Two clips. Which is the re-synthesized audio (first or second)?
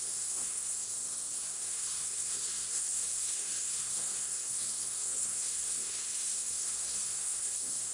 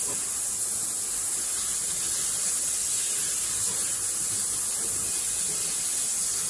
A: first